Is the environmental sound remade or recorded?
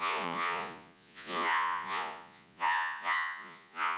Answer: remade